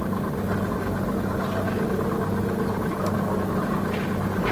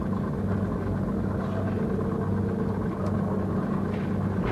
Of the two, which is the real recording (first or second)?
second